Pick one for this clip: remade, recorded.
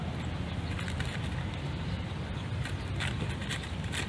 recorded